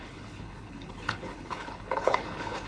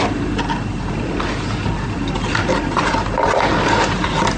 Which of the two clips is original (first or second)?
second